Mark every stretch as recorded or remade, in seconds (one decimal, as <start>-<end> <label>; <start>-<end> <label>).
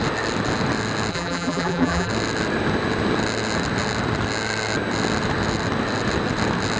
0.0-1.1 recorded; 1.1-2.1 remade; 2.1-6.8 recorded